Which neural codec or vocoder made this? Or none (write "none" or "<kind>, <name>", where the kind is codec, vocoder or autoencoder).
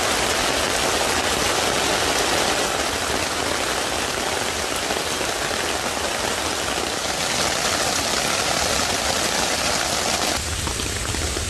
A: none